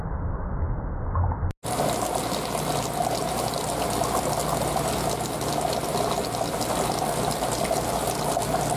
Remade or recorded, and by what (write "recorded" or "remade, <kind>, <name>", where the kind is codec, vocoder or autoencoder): recorded